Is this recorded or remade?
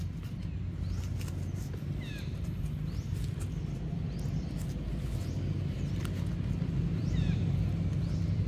recorded